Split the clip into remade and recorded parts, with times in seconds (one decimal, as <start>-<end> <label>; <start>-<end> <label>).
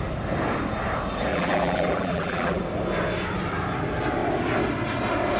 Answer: 0.0-1.3 recorded; 1.3-2.6 remade; 2.6-5.4 recorded